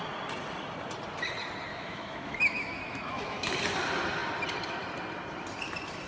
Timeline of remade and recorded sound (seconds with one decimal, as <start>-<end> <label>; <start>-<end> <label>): 0.0-1.7 recorded; 1.7-3.5 remade; 3.5-6.1 recorded